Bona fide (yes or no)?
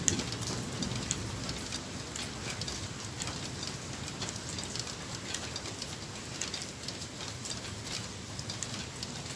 yes